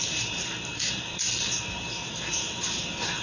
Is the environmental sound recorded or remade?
remade